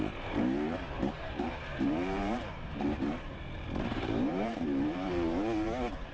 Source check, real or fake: fake